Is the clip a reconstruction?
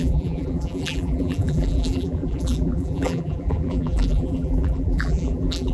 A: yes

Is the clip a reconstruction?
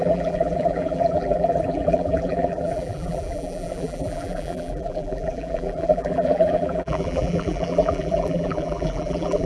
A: yes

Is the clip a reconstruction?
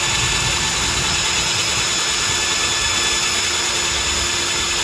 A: no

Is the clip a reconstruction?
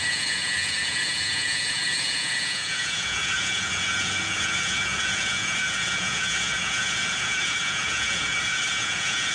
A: yes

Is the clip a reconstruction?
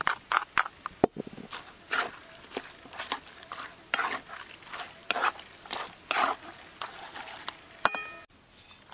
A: no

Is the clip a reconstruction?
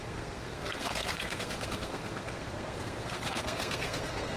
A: yes